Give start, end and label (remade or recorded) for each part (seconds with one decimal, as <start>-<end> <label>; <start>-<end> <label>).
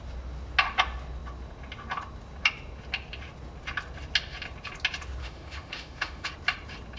0.0-5.2 recorded; 5.2-6.3 remade; 6.3-7.0 recorded